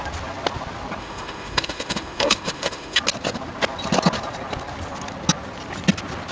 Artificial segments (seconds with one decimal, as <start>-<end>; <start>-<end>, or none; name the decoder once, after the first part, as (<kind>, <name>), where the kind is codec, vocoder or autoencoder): 1.0-3.0 (autoencoder, DAC-VAE)